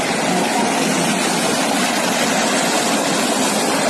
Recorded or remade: recorded